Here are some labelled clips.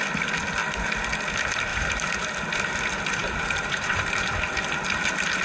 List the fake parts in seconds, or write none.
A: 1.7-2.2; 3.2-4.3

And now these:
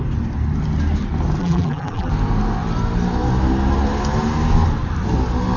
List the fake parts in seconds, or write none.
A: 1.4-2.1

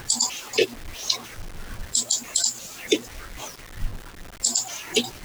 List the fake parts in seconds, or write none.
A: none

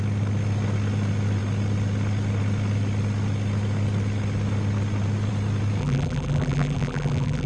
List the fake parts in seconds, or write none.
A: 5.8-7.5

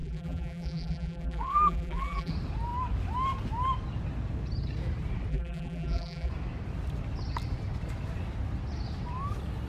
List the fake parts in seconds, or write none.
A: 0.0-2.3; 5.3-6.3

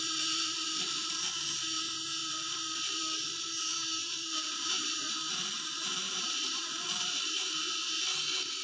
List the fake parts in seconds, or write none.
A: 2.2-3.5; 4.0-7.4

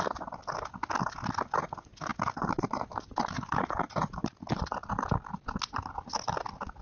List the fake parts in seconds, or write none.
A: 2.1-4.9

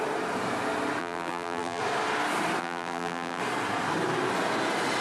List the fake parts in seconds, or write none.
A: 1.0-1.8; 2.6-3.4